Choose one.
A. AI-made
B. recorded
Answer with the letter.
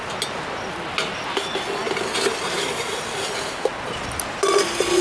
B